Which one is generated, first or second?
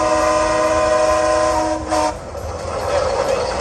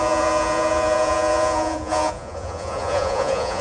second